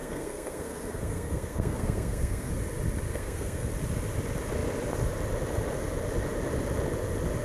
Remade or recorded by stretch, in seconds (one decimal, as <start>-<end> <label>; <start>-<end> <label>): 0.0-2.5 remade; 2.5-3.1 recorded; 3.1-3.7 remade; 3.7-7.4 recorded